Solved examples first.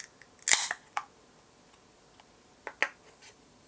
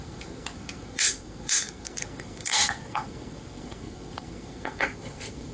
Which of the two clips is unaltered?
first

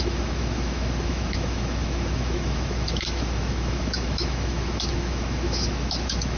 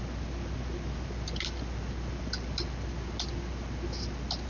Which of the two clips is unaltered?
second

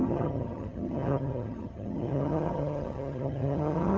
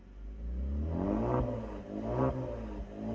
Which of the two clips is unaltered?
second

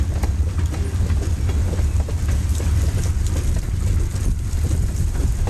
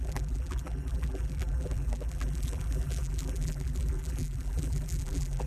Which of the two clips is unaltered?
first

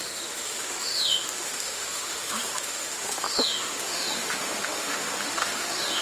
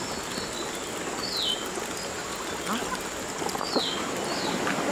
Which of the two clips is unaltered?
second